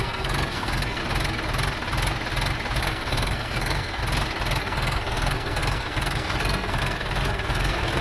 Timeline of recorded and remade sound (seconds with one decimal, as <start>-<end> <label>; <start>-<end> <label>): 0.0-1.0 remade; 1.0-2.8 recorded; 2.8-4.0 remade; 4.0-4.6 recorded; 4.6-8.0 remade